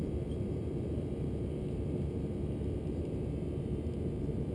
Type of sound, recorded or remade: remade